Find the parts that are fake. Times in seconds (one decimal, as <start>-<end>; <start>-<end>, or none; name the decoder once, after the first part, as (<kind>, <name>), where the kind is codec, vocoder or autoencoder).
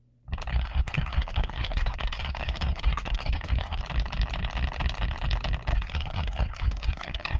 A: 0.5-3.8 (codec, SNAC); 5.7-7.4